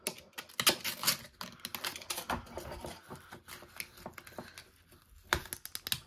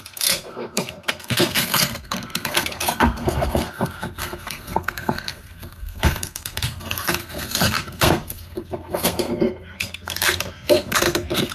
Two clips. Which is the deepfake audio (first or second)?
second